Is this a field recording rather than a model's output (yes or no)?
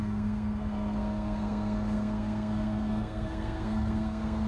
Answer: no